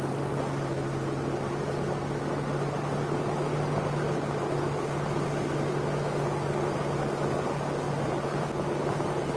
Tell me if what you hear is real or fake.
real